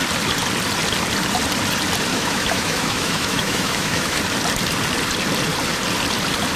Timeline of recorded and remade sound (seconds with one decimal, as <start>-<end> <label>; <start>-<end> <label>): 0.0-2.1 recorded; 2.1-4.2 remade; 4.2-6.6 recorded